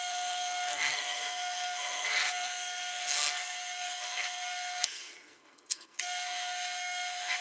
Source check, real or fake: fake